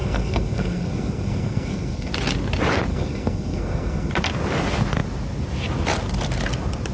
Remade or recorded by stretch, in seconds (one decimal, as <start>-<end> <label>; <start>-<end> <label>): 0.0-2.1 remade; 2.1-2.9 recorded; 2.9-4.1 remade; 4.1-6.9 recorded